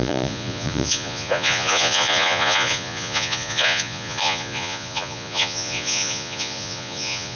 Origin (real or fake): fake